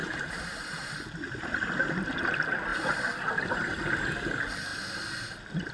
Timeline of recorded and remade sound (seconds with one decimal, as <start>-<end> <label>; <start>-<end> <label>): 0.0-0.9 remade; 0.9-5.7 recorded